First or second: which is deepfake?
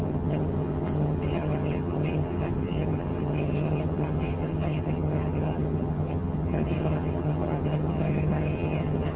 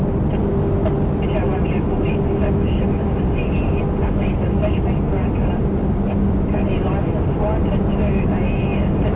first